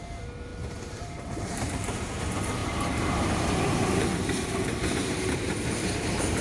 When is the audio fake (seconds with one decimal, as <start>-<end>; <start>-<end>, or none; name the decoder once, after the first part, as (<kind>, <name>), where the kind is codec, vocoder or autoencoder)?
0.5-2.2 (vocoder, BigVGAN v2); 2.6-6.4